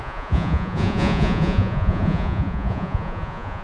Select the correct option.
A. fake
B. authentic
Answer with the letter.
A